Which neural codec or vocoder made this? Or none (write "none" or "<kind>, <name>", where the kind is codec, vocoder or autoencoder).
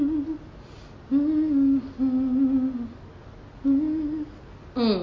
none